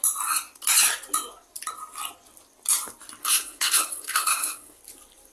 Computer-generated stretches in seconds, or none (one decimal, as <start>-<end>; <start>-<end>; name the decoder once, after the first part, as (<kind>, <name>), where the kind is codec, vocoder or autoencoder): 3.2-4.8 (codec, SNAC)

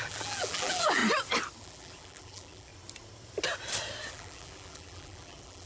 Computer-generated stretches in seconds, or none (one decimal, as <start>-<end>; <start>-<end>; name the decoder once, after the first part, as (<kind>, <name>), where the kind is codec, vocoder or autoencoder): 0.0-1.0 (vocoder, BigVGAN v2); 1.6-2.7; 4.1-5.7

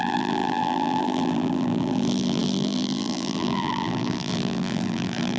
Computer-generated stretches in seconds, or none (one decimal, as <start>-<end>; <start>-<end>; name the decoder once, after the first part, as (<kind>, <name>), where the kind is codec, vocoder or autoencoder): 0.0-5.4 (vocoder, BigVGAN v2)

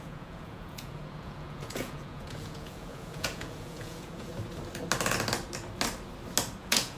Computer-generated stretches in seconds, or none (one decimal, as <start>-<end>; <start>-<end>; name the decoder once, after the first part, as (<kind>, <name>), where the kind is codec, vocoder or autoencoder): 0.0-4.3 (vocoder, Vocos); 6.6-7.0

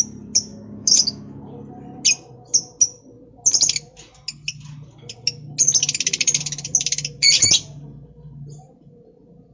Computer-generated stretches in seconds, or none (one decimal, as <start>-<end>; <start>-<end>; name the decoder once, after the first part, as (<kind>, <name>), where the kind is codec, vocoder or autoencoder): 0.5-1.4 (autoencoder, DAC-VAE)

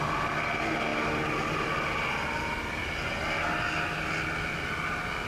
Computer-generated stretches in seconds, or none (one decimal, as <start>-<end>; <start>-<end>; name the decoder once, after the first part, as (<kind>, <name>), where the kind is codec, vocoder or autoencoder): none

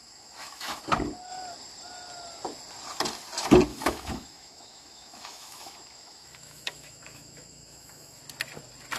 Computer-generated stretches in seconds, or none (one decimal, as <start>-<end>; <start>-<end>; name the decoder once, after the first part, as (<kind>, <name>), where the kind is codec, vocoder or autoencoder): 0.0-0.8 (autoencoder, DAC-VAE); 3.7-8.2

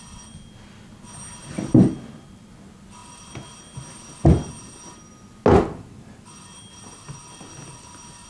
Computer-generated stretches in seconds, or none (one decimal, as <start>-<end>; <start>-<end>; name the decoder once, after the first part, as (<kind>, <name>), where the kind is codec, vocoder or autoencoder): none